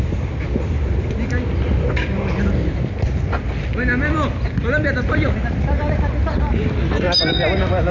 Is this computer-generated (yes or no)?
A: no